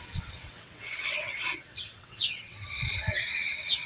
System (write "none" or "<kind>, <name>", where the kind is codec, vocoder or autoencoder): vocoder, WaveNeXt